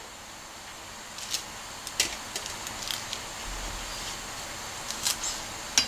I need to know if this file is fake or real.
real